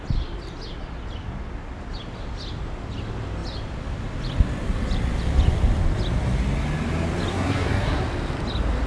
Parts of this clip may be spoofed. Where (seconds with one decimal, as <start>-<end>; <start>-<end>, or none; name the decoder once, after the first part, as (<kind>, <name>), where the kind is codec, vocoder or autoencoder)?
7.3-8.0 (codec, SNAC)